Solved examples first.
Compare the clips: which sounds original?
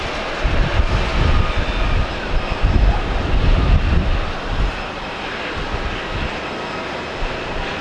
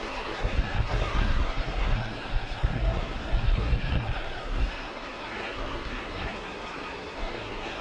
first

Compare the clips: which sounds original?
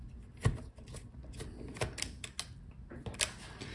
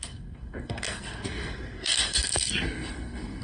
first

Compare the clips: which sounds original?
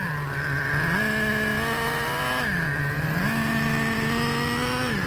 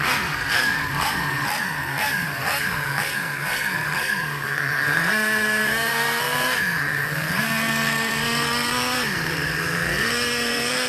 first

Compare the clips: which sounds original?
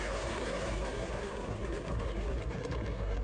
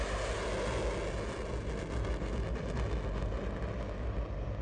second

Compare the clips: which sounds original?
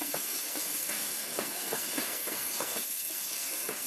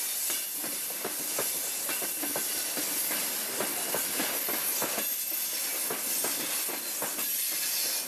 second